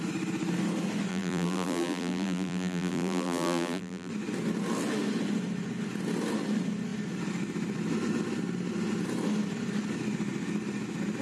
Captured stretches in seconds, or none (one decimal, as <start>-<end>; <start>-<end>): 0.0-1.1; 4.1-11.2